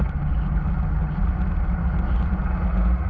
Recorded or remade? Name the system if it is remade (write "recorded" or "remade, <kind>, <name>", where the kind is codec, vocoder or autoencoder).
recorded